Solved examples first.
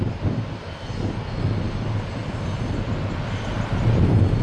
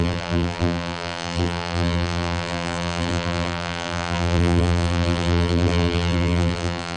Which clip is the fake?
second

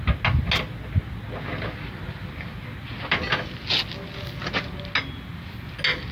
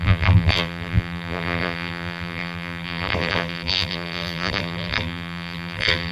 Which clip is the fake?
second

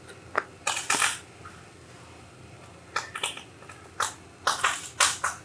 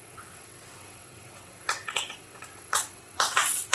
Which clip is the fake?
second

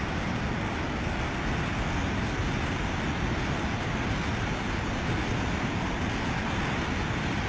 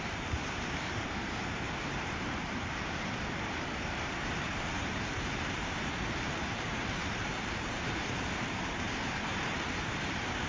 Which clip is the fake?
second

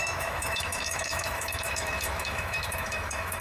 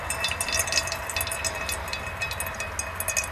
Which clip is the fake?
first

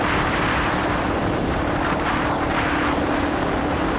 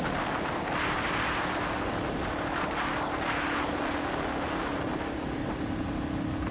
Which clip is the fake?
first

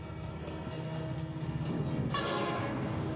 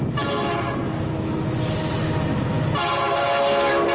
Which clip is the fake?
first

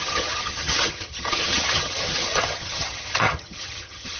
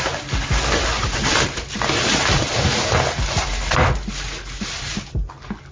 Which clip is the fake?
first